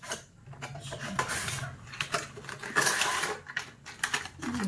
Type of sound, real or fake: real